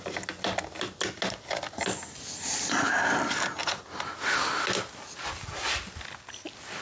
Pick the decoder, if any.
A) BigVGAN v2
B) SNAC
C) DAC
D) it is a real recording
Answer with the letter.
D